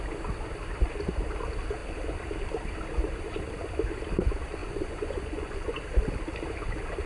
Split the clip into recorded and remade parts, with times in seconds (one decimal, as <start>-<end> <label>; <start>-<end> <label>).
0.0-4.6 recorded; 4.6-5.8 remade; 5.8-7.1 recorded